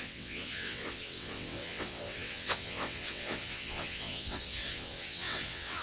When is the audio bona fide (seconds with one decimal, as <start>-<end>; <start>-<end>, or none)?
none